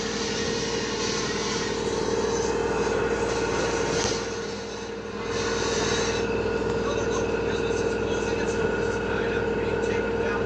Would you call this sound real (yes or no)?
yes